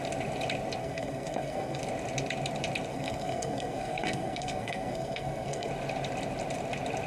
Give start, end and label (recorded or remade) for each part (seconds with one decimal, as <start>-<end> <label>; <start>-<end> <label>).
0.0-0.8 recorded; 0.8-1.8 remade; 1.8-2.9 recorded; 2.9-5.7 remade; 5.7-7.1 recorded